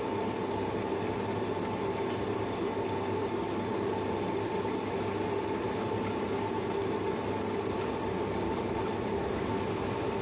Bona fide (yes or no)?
yes